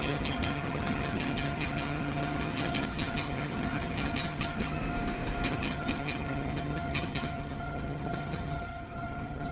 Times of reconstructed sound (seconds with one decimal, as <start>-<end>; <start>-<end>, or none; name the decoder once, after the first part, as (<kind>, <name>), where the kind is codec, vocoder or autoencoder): 0.0-4.8 (vocoder, HiFi-GAN); 5.5-9.5